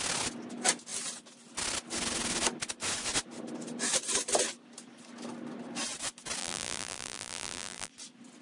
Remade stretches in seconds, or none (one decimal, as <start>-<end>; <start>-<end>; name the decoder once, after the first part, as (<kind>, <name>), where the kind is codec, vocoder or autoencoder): 6.4-7.9 (vocoder, BigVGAN v2)